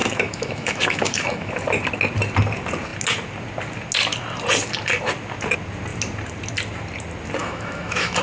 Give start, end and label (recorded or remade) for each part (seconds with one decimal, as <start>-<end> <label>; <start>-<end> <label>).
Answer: 0.0-1.5 remade; 1.5-7.4 recorded; 7.4-8.2 remade